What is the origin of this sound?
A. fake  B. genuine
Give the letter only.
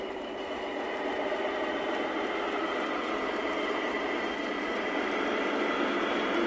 A